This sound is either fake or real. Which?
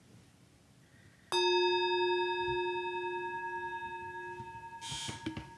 real